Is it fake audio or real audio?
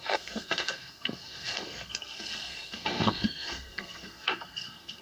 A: fake